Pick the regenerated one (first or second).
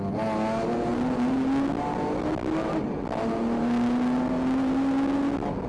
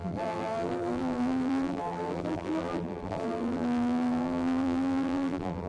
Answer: second